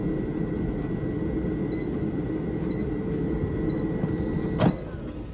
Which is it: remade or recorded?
recorded